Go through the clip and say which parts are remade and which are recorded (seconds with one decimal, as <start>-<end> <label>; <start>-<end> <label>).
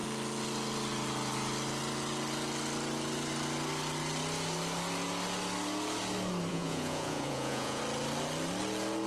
0.0-6.5 recorded; 6.5-7.8 remade; 7.8-9.1 recorded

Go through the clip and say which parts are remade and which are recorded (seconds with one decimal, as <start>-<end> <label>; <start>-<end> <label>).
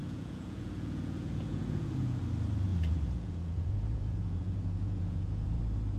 0.0-2.2 remade; 2.2-2.7 recorded; 2.7-5.6 remade; 5.6-6.0 recorded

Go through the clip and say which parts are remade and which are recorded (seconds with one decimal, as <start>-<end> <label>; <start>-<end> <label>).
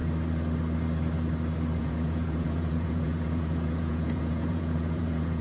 0.0-1.8 recorded; 1.8-5.4 remade